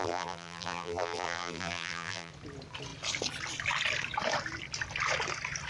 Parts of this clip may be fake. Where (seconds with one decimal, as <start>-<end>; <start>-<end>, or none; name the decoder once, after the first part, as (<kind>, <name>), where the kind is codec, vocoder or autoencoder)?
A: 0.0-2.3 (vocoder, BigVGAN v2)